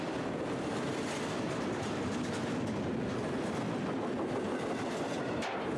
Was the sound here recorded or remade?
recorded